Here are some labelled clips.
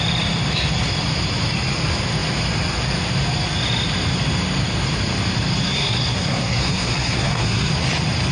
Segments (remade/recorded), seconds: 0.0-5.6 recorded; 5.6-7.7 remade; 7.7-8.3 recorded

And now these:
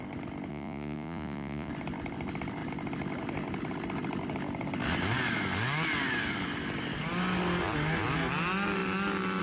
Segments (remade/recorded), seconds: 0.0-0.5 recorded; 0.5-1.7 remade; 1.7-9.4 recorded